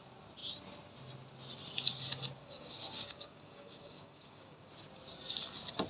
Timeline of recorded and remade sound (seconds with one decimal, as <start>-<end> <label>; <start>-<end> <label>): 0.0-2.4 recorded; 2.4-4.7 remade; 4.7-5.9 recorded